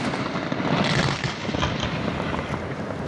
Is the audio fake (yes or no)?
no